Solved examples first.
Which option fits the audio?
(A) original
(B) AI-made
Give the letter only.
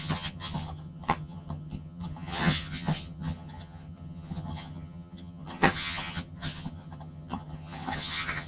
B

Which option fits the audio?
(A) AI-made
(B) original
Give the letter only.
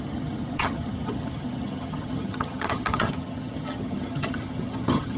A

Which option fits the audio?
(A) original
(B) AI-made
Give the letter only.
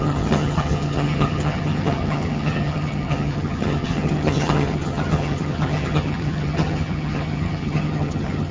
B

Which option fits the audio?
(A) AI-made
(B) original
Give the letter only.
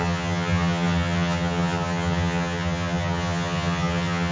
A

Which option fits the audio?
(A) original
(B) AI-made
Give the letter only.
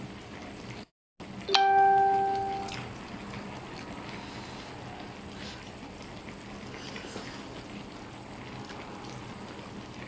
A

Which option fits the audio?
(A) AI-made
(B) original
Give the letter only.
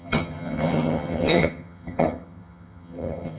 A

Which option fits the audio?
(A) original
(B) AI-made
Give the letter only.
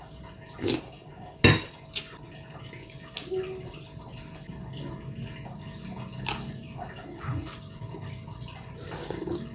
A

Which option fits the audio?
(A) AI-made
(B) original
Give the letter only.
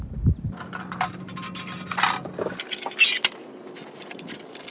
B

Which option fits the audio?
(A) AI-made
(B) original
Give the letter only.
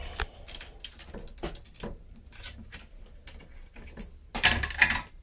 B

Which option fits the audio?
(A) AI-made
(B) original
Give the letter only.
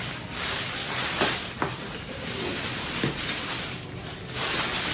B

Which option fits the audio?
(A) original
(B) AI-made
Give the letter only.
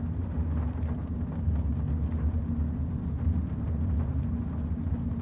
A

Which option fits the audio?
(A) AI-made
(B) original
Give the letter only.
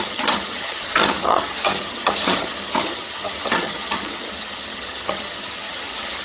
A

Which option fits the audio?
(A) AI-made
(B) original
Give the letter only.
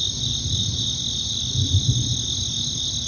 B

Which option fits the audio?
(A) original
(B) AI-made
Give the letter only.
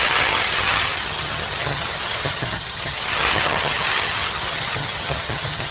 B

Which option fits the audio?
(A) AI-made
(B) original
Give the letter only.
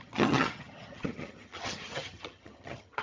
A